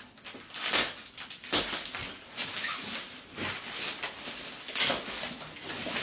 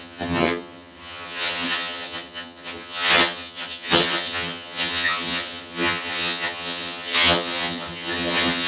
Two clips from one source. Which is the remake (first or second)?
second